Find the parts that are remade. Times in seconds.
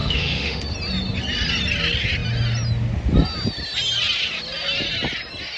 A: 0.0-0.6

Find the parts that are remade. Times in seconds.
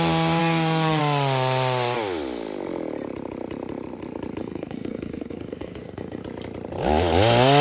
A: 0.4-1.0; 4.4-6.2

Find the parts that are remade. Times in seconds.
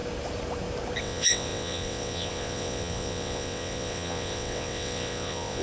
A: 1.0-5.6